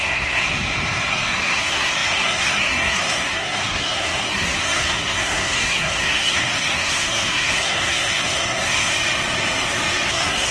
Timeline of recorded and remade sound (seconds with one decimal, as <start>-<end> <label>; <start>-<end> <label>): 0.0-0.4 remade; 0.4-1.1 recorded; 1.1-8.9 remade; 8.9-10.1 recorded; 10.1-10.5 remade